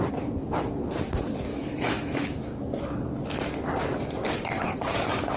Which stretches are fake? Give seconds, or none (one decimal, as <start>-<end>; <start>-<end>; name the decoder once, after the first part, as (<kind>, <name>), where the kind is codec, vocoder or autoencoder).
1.5-2.6 (autoencoder, DAC-VAE)